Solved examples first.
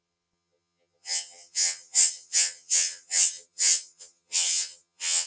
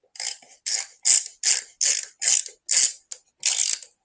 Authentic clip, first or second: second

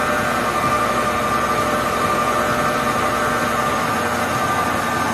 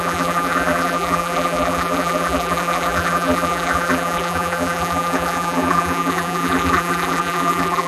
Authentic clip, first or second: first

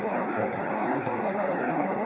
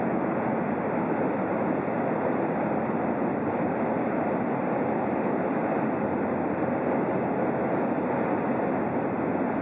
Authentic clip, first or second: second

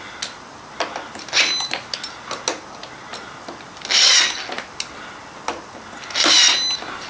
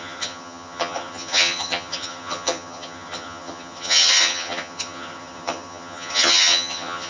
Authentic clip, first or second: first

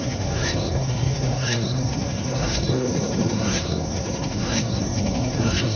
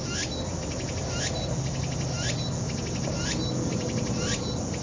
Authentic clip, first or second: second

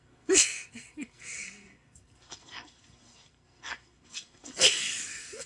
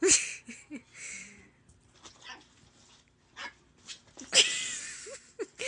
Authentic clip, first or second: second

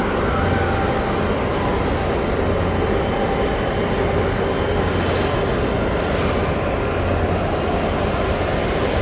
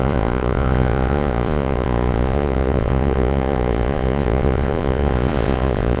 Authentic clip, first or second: first